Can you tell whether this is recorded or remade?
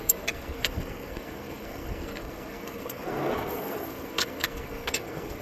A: remade